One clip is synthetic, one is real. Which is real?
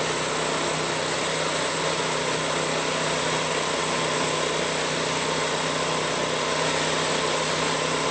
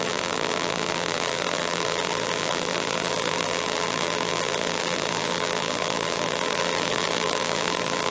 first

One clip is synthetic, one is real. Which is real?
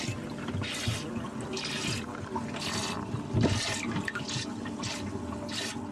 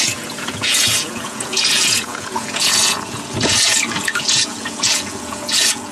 first